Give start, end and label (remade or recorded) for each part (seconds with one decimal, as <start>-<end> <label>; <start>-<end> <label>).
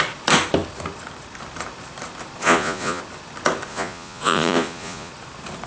0.0-2.4 recorded; 2.4-3.0 remade; 3.0-3.7 recorded; 3.7-5.1 remade; 5.1-5.7 recorded